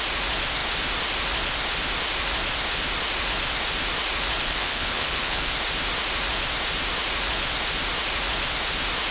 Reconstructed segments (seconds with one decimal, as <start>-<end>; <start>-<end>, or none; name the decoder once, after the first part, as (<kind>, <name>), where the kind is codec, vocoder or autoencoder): 4.4-5.5 (codec, HILCodec)